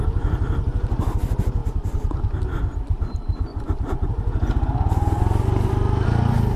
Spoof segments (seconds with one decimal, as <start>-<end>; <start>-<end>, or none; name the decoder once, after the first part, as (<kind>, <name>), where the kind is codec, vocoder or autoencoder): 3.5-4.1 (vocoder, BigVGAN v2)